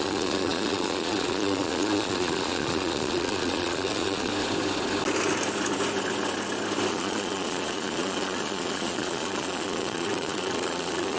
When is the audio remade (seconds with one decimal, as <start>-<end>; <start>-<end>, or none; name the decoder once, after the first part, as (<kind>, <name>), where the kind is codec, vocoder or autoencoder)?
0.0-4.3 (vocoder, Vocos); 6.9-11.2